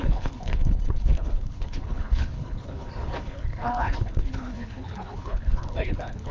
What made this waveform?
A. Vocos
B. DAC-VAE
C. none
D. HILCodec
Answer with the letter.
D